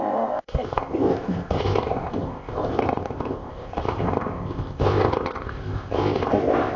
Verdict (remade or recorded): remade